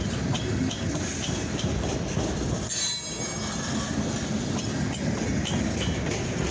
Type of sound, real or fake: real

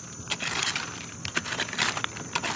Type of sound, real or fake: real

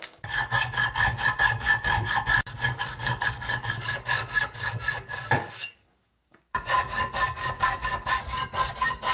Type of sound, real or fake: fake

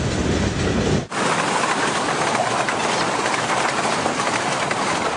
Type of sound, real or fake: real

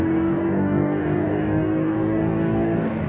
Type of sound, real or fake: fake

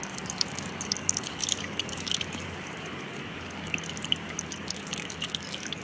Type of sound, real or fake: fake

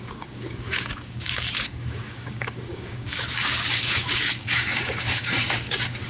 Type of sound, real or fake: fake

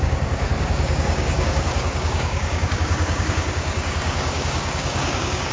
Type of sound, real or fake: fake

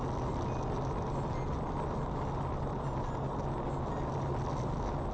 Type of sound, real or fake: real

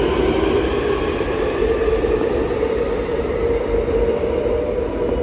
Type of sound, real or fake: real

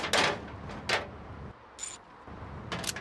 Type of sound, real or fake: real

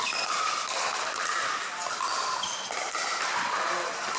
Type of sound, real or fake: real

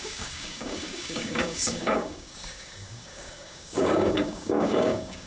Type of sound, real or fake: fake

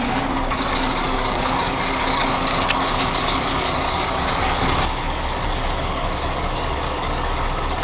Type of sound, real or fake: fake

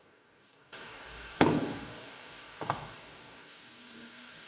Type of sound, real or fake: fake